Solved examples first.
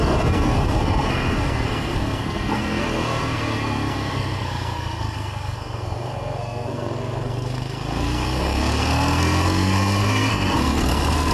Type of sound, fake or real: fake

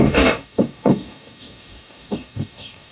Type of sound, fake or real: fake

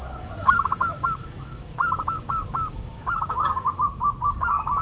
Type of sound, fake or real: fake